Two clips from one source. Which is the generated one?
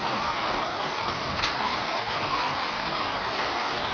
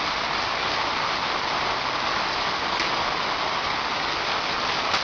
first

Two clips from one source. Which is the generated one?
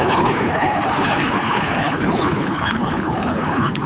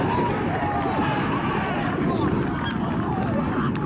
first